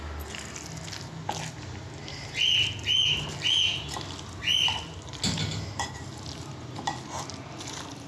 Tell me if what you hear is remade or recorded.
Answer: recorded